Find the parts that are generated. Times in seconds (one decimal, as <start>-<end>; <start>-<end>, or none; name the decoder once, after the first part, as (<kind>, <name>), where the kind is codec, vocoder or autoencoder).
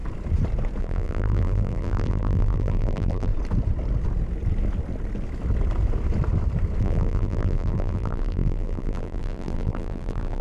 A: 0.8-3.3 (vocoder, BigVGAN v2); 6.8-10.4